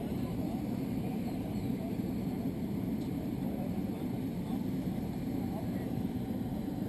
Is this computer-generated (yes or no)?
yes